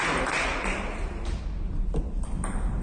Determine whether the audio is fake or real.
fake